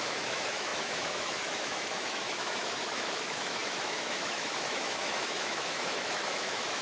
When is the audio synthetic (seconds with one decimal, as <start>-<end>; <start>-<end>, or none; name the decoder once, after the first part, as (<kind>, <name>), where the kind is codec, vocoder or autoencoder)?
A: 0.0-6.8 (autoencoder, DAC-VAE)